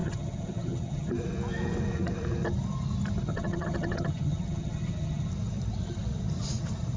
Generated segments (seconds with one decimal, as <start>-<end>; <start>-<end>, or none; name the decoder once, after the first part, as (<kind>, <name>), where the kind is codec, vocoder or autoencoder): 0.0-1.1 (vocoder, HiFi-GAN); 3.3-5.3